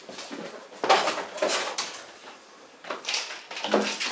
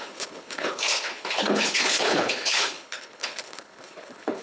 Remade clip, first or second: second